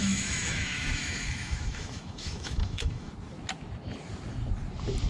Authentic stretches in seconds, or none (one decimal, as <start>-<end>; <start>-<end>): 3.1-5.1